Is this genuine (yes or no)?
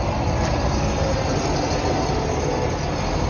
yes